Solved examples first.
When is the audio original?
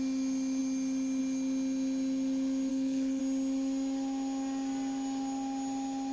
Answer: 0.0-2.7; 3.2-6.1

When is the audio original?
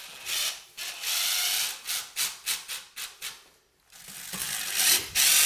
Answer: 0.0-5.5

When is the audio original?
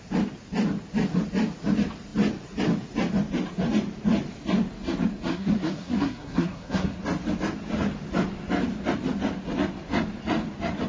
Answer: 0.0-5.3; 7.0-10.9